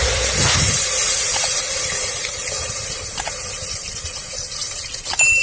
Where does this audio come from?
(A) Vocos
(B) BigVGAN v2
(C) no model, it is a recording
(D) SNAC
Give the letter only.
B